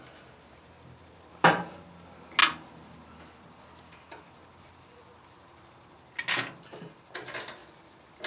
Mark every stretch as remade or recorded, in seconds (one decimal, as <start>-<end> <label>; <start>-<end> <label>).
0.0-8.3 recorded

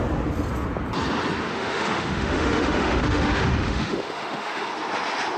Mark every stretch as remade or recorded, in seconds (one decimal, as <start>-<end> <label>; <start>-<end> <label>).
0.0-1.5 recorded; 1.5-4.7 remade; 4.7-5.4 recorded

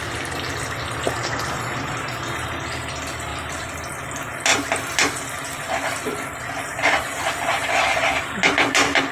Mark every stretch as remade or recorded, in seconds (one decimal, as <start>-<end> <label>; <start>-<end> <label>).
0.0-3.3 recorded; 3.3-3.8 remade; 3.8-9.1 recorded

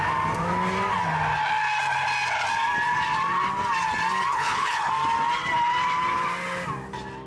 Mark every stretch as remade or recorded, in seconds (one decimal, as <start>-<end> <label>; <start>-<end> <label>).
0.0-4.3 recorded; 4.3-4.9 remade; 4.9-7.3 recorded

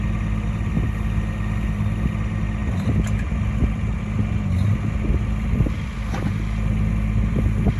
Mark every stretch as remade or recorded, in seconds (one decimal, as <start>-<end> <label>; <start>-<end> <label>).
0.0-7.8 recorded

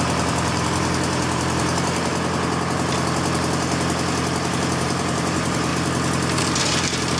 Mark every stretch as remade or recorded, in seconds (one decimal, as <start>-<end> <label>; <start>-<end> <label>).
0.0-2.1 remade; 2.1-4.5 recorded; 4.5-5.7 remade; 5.7-6.4 recorded; 6.4-7.2 remade

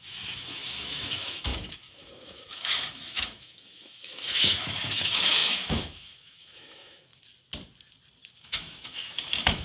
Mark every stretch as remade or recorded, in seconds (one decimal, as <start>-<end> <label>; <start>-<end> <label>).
0.0-7.1 remade; 7.1-8.4 recorded; 8.4-9.6 remade

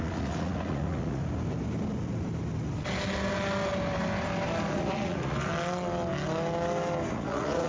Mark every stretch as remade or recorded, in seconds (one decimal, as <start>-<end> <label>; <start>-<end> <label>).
0.0-1.2 remade; 1.2-4.7 recorded; 4.7-5.5 remade; 5.5-7.1 recorded; 7.1-7.7 remade